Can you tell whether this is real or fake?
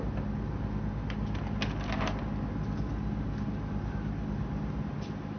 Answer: real